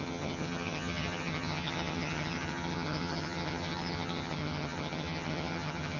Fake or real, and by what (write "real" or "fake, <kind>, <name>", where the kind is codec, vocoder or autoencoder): fake, vocoder, HiFi-GAN